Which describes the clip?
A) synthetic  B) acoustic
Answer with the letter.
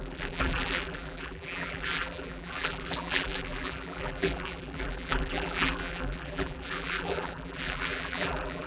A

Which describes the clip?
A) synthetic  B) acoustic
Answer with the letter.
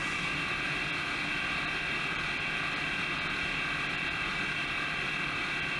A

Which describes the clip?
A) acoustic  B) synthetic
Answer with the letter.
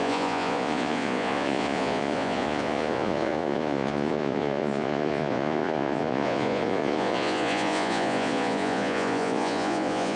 B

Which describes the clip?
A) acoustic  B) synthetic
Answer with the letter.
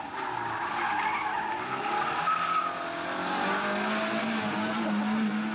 A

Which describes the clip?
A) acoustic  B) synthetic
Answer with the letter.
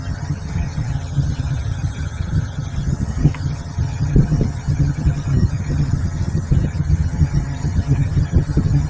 B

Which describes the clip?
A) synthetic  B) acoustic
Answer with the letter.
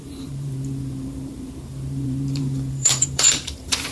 A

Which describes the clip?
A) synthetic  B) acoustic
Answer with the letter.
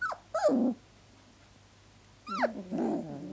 B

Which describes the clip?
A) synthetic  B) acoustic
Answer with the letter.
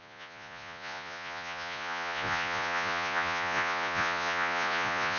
A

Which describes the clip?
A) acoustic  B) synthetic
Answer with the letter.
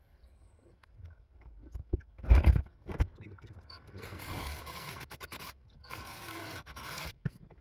B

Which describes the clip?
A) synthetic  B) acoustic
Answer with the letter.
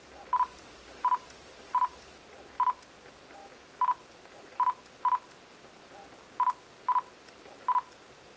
B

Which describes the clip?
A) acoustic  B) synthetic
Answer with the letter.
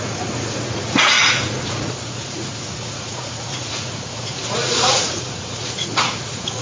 B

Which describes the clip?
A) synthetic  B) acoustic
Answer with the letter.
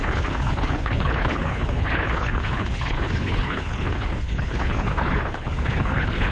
A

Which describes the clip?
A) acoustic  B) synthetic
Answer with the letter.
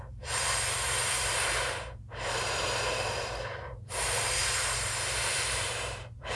B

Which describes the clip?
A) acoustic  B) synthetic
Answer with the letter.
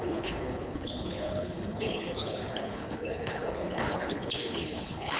B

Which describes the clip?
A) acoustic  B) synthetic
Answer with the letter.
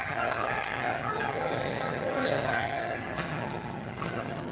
B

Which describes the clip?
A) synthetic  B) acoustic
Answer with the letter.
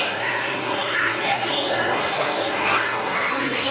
A